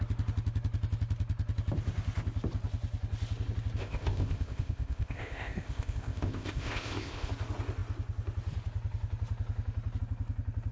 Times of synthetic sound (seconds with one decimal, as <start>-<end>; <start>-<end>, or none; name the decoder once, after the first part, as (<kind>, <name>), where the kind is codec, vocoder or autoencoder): 3.8-7.3 (codec, ZipCodec)